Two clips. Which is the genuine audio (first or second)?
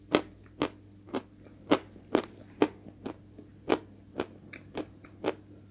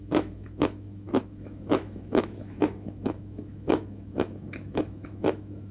first